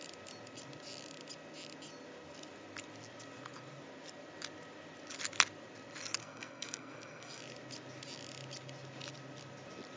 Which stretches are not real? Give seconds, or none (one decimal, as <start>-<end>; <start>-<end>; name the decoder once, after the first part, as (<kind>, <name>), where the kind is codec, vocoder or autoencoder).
6.2-7.4 (codec, SNAC)